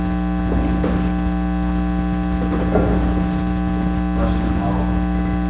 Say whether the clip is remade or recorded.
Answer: recorded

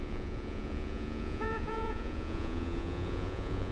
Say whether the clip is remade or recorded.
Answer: remade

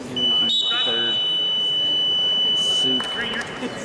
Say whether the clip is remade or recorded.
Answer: recorded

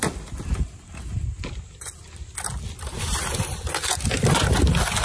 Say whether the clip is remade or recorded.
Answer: recorded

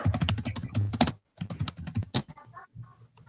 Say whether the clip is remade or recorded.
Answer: recorded